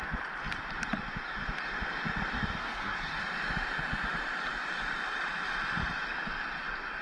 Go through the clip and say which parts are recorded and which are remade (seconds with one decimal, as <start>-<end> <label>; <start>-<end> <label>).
0.0-2.6 recorded; 2.6-3.2 remade; 3.2-7.0 recorded